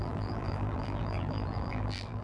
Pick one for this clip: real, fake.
fake